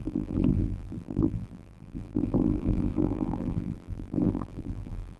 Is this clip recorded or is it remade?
remade